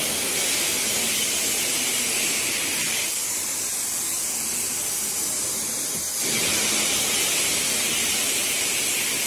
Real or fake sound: real